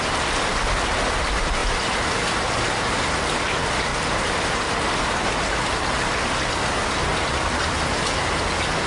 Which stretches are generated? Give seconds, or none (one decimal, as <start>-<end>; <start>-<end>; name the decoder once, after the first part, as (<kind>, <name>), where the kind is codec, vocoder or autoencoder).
none